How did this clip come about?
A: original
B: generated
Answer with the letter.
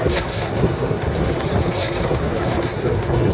B